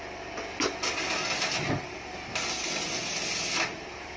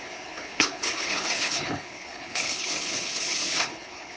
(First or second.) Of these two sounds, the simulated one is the second